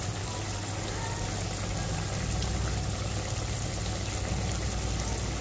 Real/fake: real